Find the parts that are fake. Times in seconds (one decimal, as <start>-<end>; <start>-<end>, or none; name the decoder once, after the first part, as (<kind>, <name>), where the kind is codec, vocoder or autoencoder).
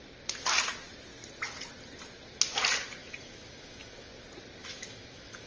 3.0-4.1 (autoencoder, DAC-VAE); 4.6-5.5